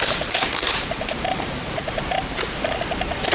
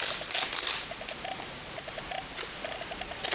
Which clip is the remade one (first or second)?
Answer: first